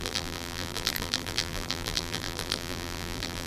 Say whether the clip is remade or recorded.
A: remade